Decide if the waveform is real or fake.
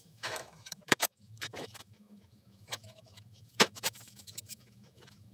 fake